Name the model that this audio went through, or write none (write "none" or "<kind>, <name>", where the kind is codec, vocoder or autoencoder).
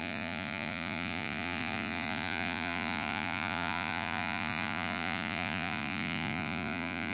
vocoder, Vocos